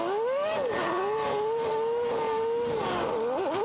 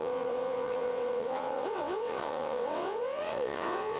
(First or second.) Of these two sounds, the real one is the first